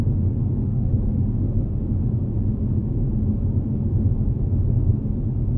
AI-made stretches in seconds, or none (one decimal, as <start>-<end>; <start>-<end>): 0.6-1.8